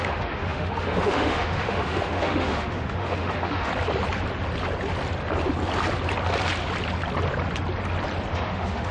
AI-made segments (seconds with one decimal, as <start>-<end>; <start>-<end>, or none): 0.0-3.7; 8.3-8.9